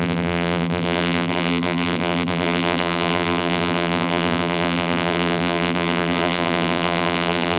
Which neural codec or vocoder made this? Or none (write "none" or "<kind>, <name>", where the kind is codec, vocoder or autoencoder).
vocoder, BigVGAN v2